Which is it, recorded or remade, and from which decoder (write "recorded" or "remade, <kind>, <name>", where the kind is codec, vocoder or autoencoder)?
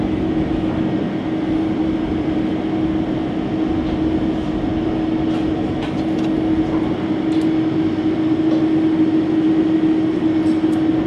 recorded